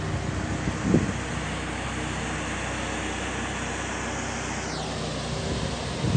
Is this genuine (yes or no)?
yes